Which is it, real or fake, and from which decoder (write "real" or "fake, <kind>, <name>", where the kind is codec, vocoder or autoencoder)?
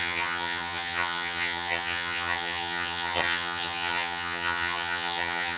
fake, vocoder, HiFi-GAN